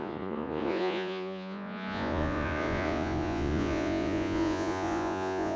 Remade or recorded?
remade